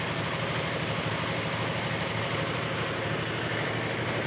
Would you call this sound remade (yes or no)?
no